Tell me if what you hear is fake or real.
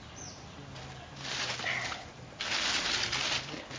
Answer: real